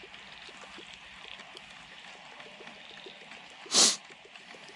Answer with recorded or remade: recorded